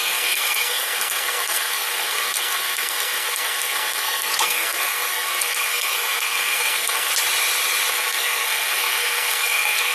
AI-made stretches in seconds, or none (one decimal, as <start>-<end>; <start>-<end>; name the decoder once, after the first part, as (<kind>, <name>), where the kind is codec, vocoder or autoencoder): 0.0-7.1 (codec, SNAC); 7.9-9.9